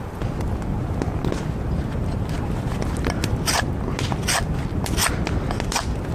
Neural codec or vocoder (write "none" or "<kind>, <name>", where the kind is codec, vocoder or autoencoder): none